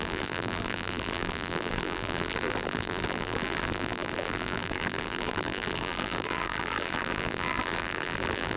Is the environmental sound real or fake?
fake